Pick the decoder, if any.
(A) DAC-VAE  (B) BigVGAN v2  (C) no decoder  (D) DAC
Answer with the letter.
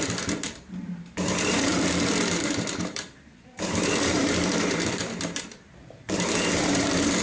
B